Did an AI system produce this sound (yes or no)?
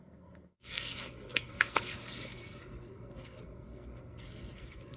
yes